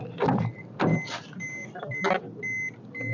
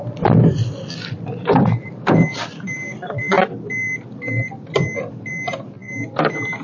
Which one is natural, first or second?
first